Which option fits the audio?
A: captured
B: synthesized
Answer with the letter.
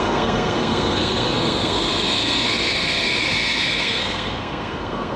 B